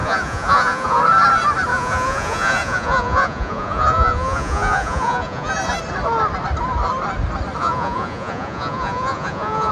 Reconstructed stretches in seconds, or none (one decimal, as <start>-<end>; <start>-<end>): 0.0-1.0; 1.7-5.5; 7.6-9.7